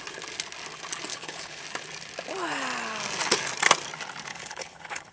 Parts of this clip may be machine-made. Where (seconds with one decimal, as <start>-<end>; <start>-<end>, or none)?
1.1-1.6; 4.3-5.1